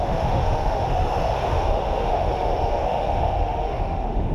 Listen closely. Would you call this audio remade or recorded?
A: remade